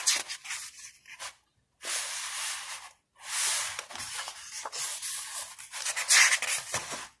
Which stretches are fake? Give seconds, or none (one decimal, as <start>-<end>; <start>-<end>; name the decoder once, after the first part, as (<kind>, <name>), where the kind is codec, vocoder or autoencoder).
none